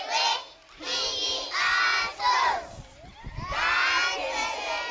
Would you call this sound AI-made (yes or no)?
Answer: no